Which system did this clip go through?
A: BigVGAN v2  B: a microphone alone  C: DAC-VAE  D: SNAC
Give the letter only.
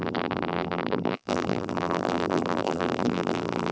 A